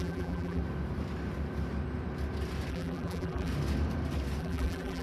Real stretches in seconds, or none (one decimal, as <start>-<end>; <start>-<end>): 0.6-2.7; 3.5-4.4